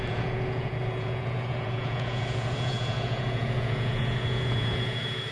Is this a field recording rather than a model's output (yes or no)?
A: no